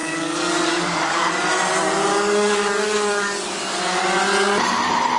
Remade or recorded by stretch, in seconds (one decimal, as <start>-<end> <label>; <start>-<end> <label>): 0.0-1.3 remade; 1.3-2.1 recorded; 2.1-3.8 remade; 3.8-5.2 recorded